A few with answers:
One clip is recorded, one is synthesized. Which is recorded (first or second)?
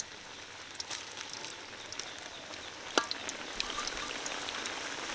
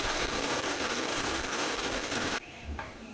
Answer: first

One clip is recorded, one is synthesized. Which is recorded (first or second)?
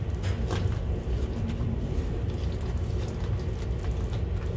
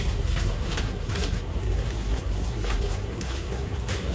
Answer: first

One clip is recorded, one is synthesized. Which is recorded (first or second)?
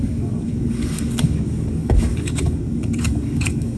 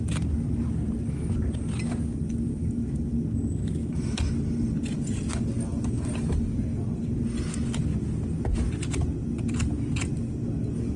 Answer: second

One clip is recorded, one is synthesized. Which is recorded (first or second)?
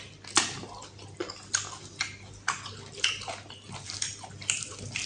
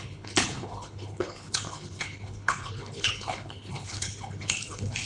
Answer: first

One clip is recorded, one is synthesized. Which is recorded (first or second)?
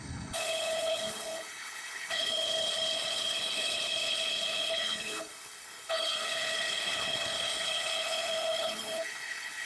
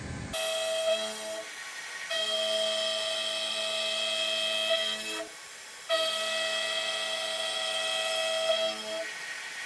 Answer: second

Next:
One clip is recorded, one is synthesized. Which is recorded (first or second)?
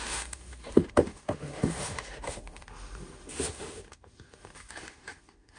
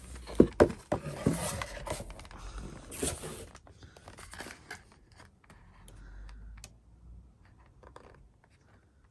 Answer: second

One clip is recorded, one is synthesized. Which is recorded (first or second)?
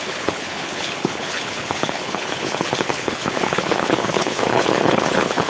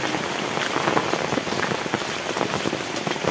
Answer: second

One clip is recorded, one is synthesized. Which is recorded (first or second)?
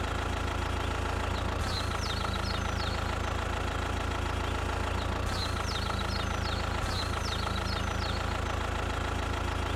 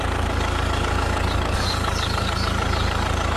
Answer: first